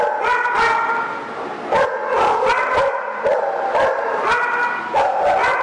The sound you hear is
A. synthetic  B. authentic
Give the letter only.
B